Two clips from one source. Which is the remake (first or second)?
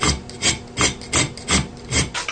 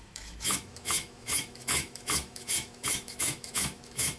second